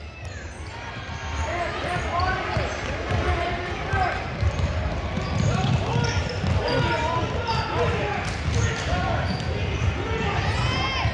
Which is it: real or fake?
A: real